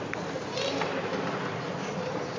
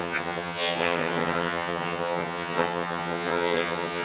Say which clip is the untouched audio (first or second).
first